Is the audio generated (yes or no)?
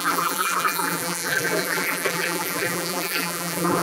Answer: yes